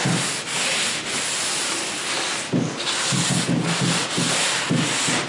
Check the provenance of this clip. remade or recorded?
recorded